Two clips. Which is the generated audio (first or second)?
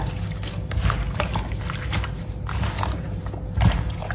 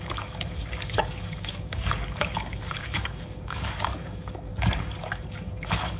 second